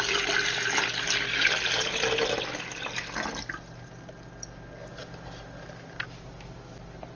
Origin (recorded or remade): recorded